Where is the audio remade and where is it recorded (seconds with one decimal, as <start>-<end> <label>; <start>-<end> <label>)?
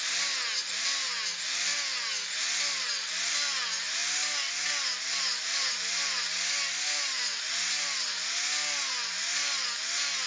0.0-10.3 recorded